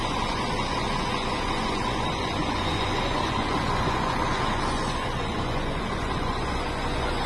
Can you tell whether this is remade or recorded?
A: remade